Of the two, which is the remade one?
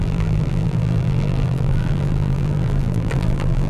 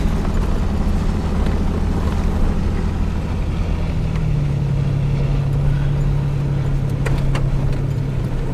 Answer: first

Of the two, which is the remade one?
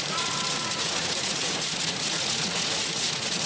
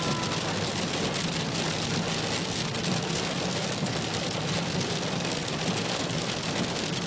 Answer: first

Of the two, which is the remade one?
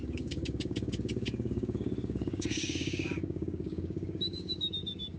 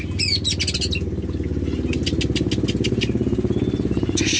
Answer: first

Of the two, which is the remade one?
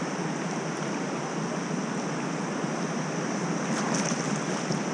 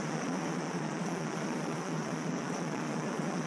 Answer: second